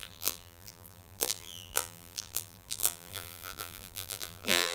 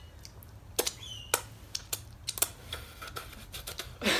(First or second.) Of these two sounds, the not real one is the first